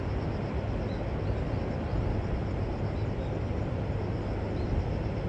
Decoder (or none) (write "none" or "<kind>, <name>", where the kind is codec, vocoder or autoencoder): none